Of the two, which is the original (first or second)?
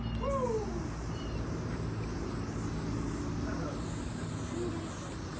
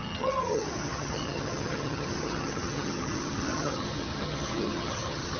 first